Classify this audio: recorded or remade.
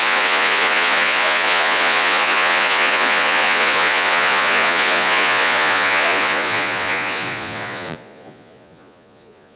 remade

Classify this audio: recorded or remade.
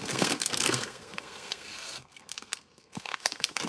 remade